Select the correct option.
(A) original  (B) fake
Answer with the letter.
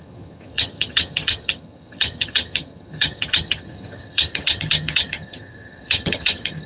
B